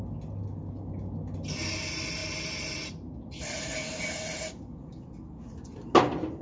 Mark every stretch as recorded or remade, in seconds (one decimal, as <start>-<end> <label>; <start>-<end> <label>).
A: 0.0-6.4 recorded